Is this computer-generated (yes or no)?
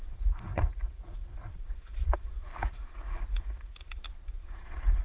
yes